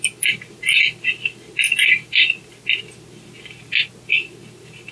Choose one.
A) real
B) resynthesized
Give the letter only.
A